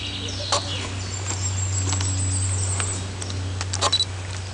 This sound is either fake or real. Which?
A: real